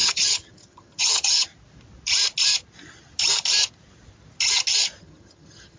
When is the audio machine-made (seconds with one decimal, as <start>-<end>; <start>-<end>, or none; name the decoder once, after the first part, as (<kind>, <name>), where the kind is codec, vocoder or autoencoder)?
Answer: 0.0-1.5 (vocoder, HiFi-GAN); 5.0-5.8